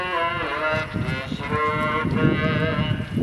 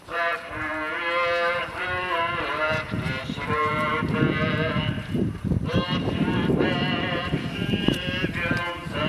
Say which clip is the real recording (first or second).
first